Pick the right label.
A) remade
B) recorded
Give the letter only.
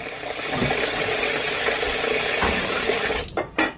B